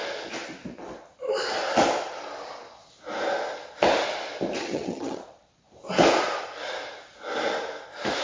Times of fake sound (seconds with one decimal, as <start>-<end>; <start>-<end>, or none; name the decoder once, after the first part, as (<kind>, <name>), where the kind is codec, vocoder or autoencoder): 4.6-5.2 (vocoder, HiFi-GAN)